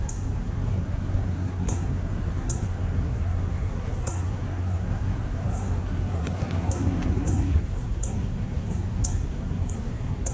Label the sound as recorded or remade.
remade